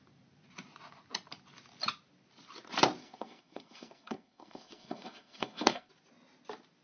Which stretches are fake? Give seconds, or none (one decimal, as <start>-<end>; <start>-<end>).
3.0-5.9